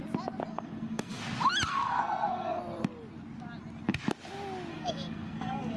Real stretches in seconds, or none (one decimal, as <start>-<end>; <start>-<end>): 0.0-0.5; 1.2-1.7; 2.6-4.7